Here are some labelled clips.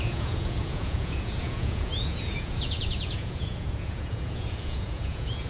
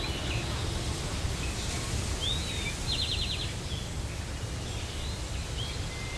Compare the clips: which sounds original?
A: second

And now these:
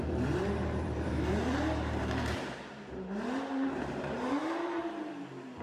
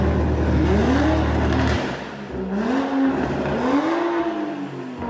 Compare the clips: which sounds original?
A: second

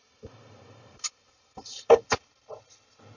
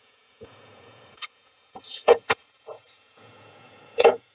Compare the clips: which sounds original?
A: first